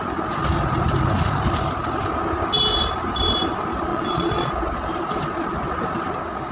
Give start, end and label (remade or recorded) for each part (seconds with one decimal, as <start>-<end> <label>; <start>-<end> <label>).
0.0-3.9 recorded; 3.9-4.5 remade; 4.5-6.5 recorded